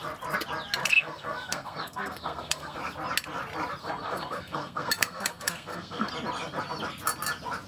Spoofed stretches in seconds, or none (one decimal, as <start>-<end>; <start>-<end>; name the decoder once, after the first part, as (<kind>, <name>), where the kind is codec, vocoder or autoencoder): 0.8-2.8 (codec, SNAC); 3.8-6.1